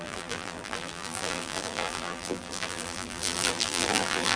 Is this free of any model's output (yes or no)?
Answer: no